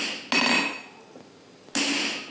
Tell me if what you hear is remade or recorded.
recorded